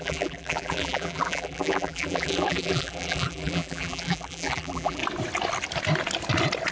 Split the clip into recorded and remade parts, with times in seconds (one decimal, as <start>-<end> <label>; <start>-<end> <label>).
0.0-5.0 remade; 5.0-6.7 recorded

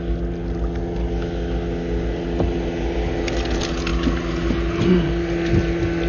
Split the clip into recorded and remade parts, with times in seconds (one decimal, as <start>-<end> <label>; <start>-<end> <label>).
0.0-6.1 recorded

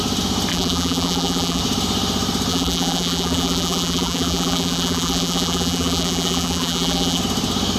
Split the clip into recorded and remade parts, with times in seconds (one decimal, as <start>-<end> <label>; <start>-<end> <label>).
0.0-0.5 recorded; 0.5-1.6 remade; 1.6-2.5 recorded; 2.5-7.2 remade; 7.2-7.8 recorded

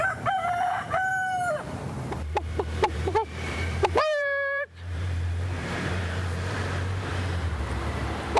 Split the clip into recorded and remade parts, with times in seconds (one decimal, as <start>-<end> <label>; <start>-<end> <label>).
0.0-7.1 remade; 7.1-7.6 recorded; 7.6-8.4 remade